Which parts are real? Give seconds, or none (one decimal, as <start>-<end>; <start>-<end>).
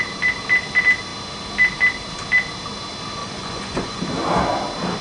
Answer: 0.0-3.2; 4.0-5.0